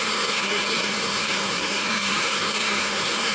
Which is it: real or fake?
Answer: fake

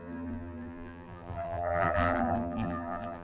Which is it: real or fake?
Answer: fake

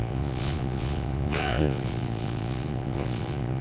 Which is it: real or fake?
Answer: fake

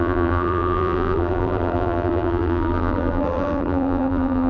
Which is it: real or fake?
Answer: fake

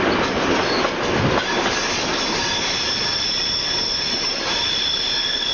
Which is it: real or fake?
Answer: real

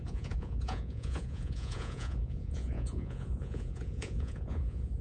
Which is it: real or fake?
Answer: fake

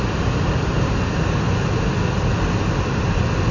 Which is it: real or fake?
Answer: real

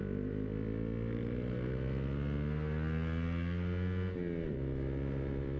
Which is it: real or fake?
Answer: real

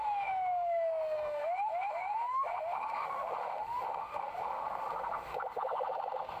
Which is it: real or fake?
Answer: fake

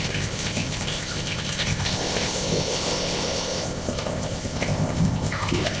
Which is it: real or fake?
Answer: fake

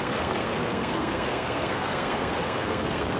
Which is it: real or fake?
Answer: fake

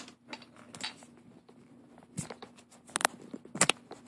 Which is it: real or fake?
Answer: real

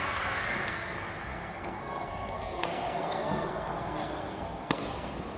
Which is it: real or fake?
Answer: fake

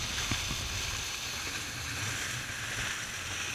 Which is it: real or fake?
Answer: real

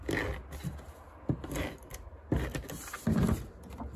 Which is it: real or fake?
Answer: real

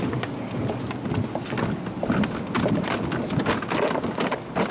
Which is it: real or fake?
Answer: real